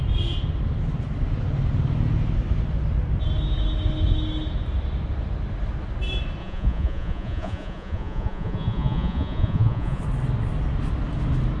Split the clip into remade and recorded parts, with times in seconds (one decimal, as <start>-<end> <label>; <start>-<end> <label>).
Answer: 0.0-6.4 recorded; 6.4-10.0 remade; 10.0-11.6 recorded